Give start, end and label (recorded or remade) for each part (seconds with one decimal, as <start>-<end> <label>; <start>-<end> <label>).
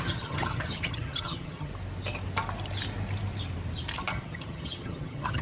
0.0-1.7 remade; 1.7-4.1 recorded; 4.1-5.4 remade